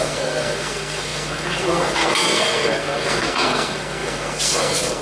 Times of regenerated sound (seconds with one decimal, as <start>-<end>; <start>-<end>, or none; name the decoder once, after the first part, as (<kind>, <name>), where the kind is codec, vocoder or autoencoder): 0.0-5.0 (codec, SNAC)